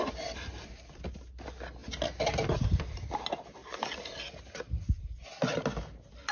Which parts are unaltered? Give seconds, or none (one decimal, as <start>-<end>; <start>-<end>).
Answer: 0.0-3.6; 4.3-6.3